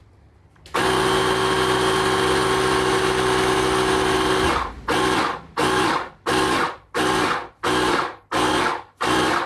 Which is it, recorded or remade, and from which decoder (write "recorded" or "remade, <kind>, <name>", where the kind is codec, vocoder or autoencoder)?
recorded